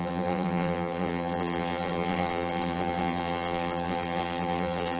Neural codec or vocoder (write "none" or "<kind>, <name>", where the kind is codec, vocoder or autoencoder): vocoder, BigVGAN v2